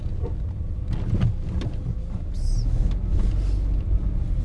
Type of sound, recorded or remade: recorded